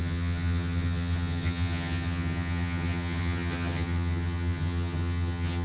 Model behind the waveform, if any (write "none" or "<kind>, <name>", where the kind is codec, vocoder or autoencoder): vocoder, HiFi-GAN